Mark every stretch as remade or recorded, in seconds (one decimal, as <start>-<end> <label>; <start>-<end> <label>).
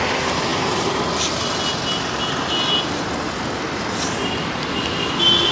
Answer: 0.0-5.5 recorded